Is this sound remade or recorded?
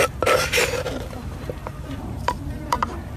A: remade